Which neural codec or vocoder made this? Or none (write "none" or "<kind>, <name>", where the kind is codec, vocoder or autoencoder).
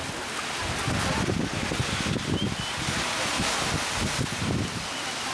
none